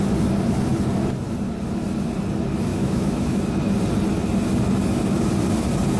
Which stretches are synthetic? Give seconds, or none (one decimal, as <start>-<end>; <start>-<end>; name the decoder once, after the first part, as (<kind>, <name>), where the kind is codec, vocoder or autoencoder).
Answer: 2.7-3.4 (autoencoder, DAC-VAE)